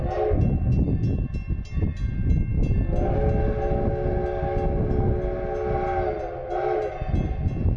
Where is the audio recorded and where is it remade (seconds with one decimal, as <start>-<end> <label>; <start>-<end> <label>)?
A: 0.0-7.8 recorded